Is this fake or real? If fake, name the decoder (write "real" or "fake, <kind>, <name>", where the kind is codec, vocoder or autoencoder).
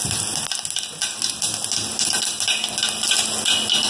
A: real